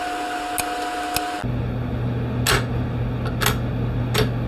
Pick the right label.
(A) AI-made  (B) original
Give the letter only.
B